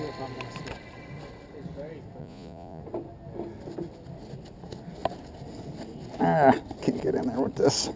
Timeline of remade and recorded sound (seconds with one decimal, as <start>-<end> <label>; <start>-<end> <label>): 0.0-2.2 recorded; 2.2-2.8 remade; 2.8-8.0 recorded

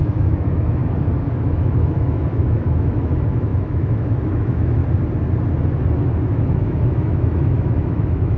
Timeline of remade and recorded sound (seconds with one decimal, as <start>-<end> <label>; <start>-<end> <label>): 0.0-0.8 remade; 0.8-1.3 recorded; 1.3-4.8 remade; 4.8-6.2 recorded; 6.2-8.4 remade